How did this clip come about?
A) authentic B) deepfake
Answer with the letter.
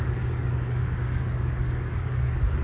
B